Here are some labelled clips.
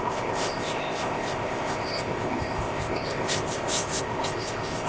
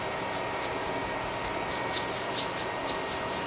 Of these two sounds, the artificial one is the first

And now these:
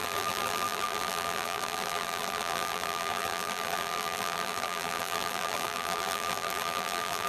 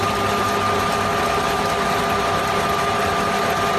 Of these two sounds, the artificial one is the first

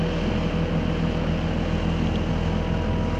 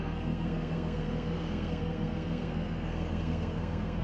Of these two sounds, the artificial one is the second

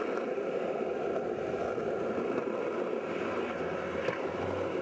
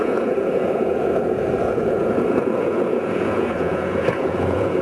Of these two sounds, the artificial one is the second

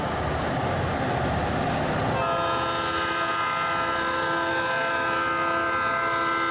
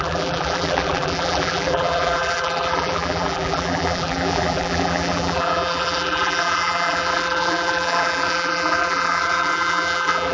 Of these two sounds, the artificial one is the second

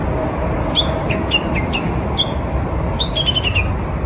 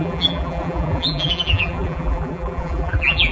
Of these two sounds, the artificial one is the second